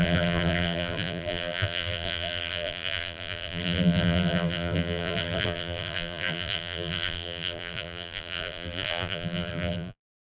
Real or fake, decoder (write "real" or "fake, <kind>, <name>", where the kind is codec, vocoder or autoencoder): fake, vocoder, BigVGAN v2